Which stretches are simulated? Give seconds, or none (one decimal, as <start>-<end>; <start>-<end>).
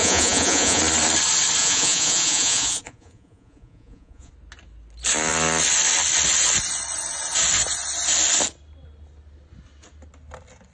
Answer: 0.0-0.8; 1.6-4.3